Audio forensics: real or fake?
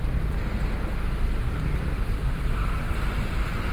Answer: real